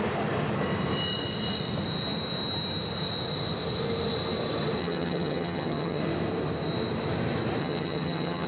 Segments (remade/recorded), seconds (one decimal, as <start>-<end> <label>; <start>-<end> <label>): 0.0-4.8 recorded; 4.8-6.0 remade; 6.0-7.6 recorded; 7.6-8.5 remade